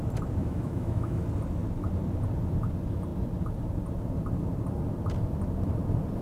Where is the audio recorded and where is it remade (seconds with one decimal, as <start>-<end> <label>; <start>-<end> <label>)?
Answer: 0.0-0.4 recorded; 0.4-1.2 remade; 1.2-6.2 recorded